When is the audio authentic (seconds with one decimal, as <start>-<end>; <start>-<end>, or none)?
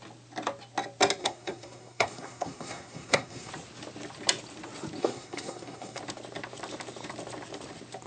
0.0-1.2; 3.5-5.0; 6.0-8.1